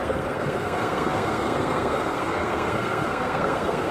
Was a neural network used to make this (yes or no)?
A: yes